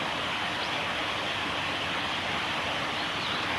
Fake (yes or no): no